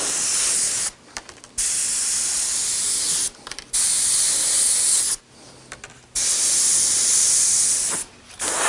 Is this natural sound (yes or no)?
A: yes